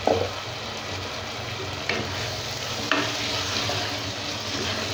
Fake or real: real